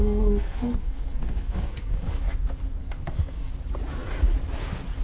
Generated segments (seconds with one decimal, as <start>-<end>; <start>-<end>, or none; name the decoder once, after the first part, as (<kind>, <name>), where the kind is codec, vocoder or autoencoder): 0.0-2.2 (codec, SNAC); 2.8-3.5